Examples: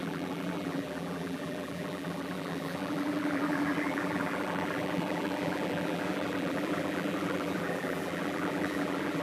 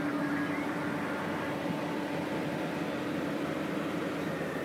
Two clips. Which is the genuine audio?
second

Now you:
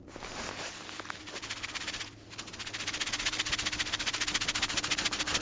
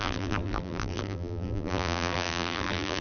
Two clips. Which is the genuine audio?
first